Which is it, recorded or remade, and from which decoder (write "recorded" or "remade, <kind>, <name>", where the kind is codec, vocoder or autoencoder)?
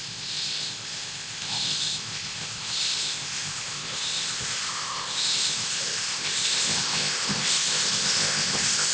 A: remade, codec, ZipCodec